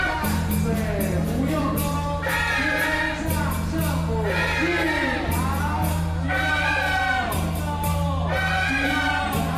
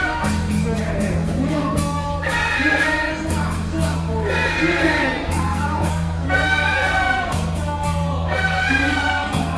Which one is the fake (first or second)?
second